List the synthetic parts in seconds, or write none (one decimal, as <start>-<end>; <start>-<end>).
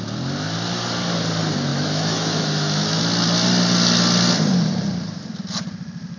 1.7-3.0